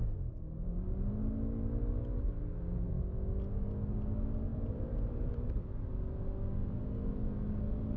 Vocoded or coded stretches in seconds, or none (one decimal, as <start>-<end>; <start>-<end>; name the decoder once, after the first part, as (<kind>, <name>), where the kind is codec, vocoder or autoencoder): 4.5-5.7 (vocoder, BigVGAN v2)